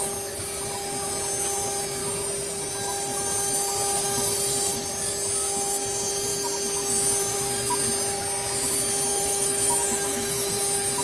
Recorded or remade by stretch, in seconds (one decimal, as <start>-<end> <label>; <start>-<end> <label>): 0.0-9.1 recorded; 9.1-10.5 remade; 10.5-11.0 recorded

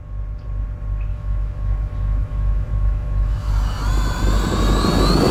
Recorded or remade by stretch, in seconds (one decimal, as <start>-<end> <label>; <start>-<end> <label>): 0.0-1.1 recorded; 1.1-3.5 remade; 3.5-5.3 recorded

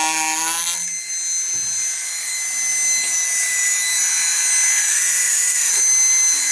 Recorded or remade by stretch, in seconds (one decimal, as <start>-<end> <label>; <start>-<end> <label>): 0.0-4.9 recorded; 4.9-5.7 remade; 5.7-6.5 recorded

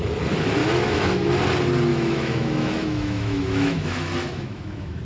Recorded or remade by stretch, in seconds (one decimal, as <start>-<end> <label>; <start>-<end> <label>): 0.0-0.6 recorded; 0.6-1.3 remade; 1.3-1.9 recorded; 1.9-5.0 remade